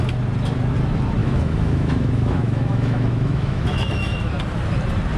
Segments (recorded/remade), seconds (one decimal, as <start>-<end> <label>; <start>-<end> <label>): 0.0-1.2 recorded; 1.2-4.3 remade; 4.3-5.2 recorded